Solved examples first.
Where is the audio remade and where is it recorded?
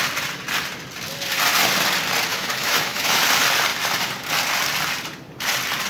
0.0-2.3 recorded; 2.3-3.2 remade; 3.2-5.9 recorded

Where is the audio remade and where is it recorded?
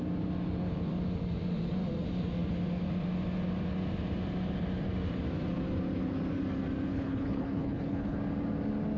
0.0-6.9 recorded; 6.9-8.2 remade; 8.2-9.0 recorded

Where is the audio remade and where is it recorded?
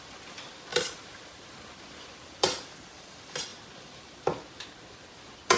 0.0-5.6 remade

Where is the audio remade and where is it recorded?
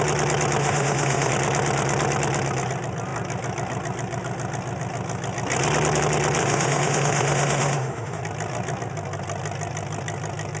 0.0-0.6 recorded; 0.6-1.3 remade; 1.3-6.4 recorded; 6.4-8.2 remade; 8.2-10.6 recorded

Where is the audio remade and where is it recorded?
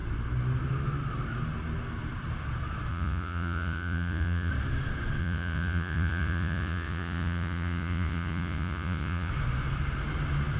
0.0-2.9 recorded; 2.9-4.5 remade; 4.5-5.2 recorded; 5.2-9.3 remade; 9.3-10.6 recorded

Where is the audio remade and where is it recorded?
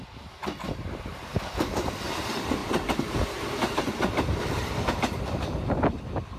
0.0-2.6 remade; 2.6-4.0 recorded; 4.0-6.4 remade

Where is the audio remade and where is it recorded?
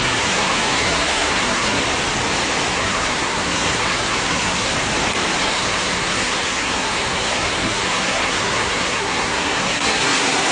0.0-1.8 remade; 1.8-2.7 recorded; 2.7-4.7 remade; 4.7-5.4 recorded; 5.4-10.5 remade